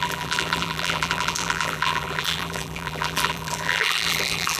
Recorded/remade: remade